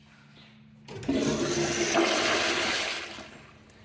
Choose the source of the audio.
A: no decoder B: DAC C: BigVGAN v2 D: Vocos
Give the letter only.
A